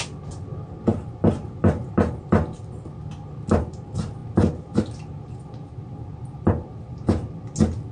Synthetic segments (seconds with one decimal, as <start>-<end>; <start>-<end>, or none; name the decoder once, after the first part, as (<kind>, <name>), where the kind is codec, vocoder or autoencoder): none